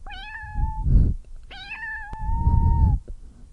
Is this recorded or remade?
recorded